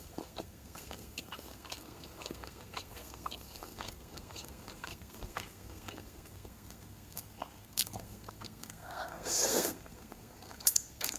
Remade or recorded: remade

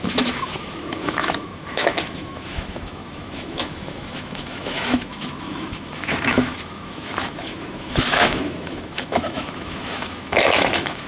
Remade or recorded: remade